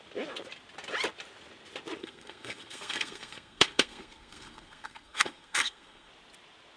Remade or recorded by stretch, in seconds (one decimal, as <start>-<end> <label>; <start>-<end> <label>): 0.0-2.0 recorded; 2.0-6.1 remade; 6.1-6.8 recorded